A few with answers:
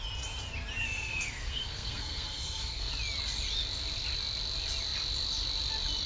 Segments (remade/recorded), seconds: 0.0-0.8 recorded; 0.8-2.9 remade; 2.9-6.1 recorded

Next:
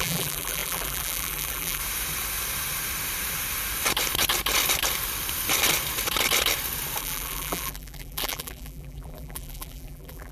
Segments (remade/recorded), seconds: 0.0-1.8 remade; 1.8-7.0 recorded; 7.0-10.3 remade

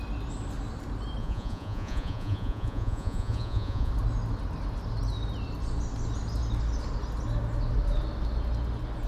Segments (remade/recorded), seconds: 0.0-1.2 recorded; 1.2-3.9 remade; 3.9-9.1 recorded

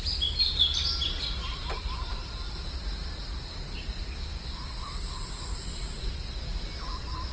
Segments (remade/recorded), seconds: 0.0-7.3 recorded